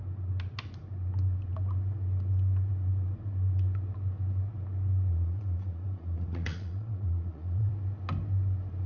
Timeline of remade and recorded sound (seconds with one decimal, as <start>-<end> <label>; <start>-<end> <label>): 0.0-5.1 recorded; 5.1-7.7 remade; 7.7-8.9 recorded